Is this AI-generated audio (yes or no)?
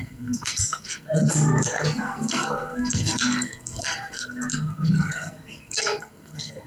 yes